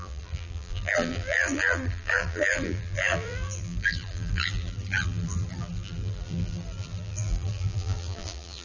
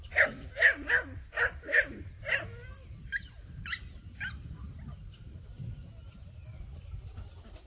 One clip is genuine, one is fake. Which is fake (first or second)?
first